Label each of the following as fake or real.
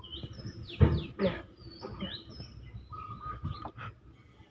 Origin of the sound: real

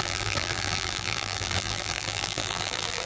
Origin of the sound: fake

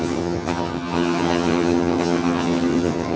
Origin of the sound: fake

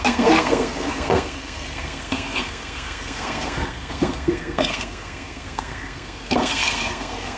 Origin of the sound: fake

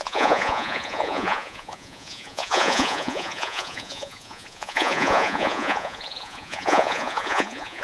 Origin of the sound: fake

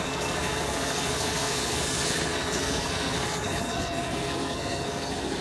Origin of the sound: fake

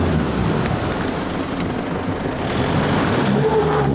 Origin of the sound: real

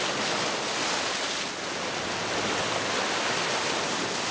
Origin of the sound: real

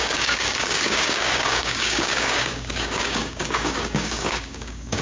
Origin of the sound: fake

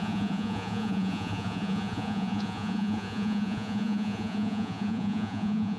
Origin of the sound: fake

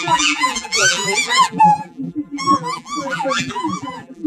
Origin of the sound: fake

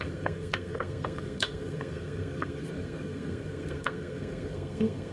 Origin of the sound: fake